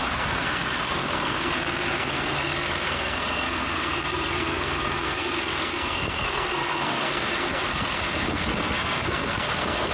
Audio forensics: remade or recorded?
remade